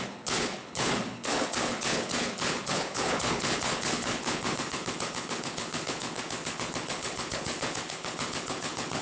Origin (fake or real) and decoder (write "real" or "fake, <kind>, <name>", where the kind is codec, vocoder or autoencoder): fake, codec, HILCodec